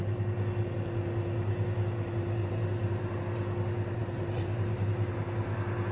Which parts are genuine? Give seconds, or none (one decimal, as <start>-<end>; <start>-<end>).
0.0-2.4; 3.2-4.0; 5.1-5.9